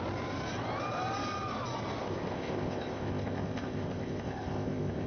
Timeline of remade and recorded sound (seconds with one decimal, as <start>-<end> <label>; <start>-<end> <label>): 0.0-2.0 recorded; 2.0-5.1 remade